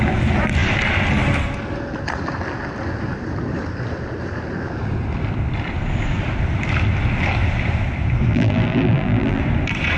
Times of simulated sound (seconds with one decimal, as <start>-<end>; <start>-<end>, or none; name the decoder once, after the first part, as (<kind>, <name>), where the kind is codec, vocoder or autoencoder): 8.3-9.4 (vocoder, BigVGAN v2)